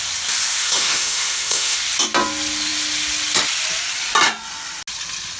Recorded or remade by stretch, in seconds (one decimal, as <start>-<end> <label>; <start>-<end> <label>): 0.0-0.6 recorded; 0.6-1.8 remade; 1.8-5.4 recorded